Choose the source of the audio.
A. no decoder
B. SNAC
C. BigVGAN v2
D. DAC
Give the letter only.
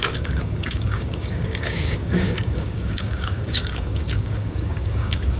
D